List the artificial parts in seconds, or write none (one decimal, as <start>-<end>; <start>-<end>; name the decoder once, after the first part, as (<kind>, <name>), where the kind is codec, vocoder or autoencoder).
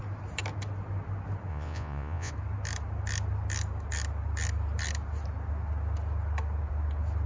1.5-2.3 (vocoder, Vocos)